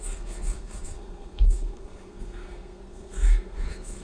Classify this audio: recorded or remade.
remade